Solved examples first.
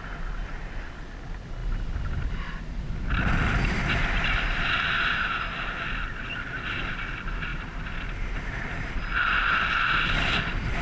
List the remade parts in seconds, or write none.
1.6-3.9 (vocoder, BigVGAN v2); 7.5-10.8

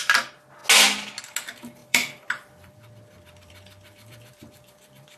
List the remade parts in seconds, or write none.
1.8-5.2 (vocoder, BigVGAN v2)

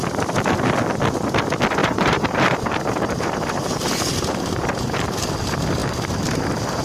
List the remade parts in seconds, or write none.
1.8-5.3 (vocoder, BigVGAN v2); 5.8-6.8

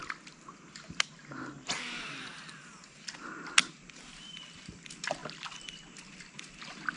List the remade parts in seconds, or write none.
none

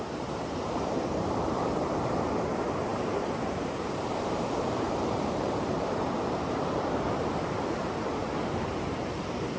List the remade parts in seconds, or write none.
0.0-9.6 (vocoder, BigVGAN v2)

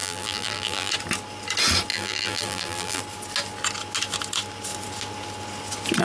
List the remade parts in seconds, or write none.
0.0-0.9 (vocoder, BigVGAN v2); 1.9-3.0

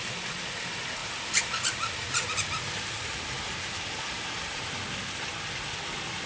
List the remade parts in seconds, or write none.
1.0-4.7 (vocoder, BigVGAN v2)